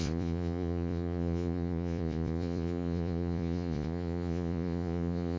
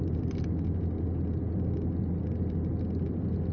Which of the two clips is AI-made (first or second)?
first